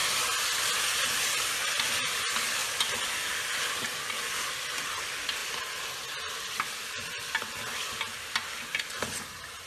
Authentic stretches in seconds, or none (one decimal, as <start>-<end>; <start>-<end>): 0.0-9.7